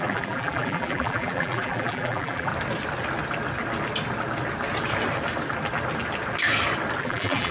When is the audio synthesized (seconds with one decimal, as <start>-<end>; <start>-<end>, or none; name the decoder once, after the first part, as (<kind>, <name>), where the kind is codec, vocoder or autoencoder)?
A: 0.0-2.5 (vocoder, BigVGAN v2); 7.0-7.5